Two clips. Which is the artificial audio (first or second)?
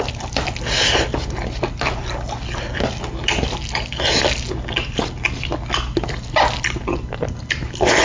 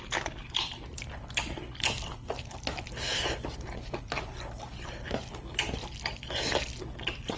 second